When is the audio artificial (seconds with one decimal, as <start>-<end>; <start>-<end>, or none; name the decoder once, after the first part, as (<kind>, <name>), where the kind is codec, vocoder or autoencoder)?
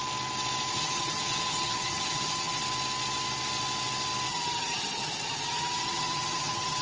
0.7-2.6 (vocoder, HiFi-GAN); 4.3-6.8